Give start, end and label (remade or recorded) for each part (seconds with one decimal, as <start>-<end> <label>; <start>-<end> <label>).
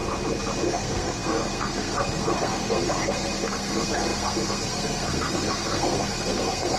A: 0.0-0.7 recorded; 0.7-6.8 remade